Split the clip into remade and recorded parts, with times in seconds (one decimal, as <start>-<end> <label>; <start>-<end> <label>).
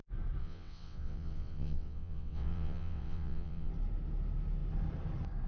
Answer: 0.0-0.4 recorded; 0.4-3.7 remade; 3.7-5.5 recorded